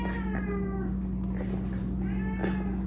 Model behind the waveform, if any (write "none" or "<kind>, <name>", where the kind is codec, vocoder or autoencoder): none